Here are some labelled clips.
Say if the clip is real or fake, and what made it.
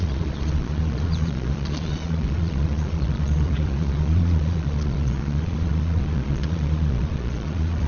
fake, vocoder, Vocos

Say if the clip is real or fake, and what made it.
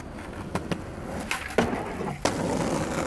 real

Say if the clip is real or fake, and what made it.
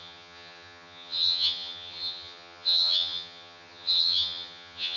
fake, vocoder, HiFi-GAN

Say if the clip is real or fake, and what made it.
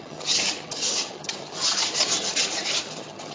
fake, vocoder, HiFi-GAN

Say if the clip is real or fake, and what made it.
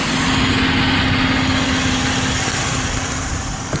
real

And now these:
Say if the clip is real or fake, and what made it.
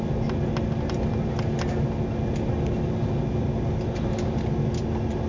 real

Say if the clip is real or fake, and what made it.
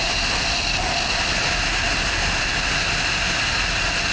real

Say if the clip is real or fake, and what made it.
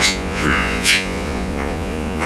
fake, vocoder, Vocos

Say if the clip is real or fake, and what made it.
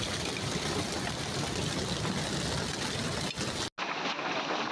real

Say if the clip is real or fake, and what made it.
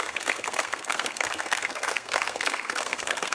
fake, codec, SNAC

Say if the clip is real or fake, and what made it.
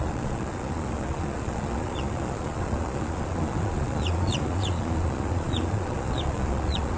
fake, vocoder, Vocos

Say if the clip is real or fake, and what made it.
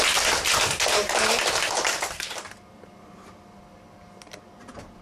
real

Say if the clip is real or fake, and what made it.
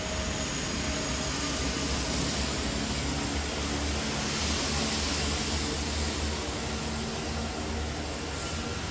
real